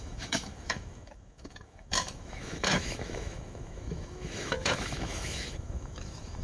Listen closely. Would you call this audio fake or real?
fake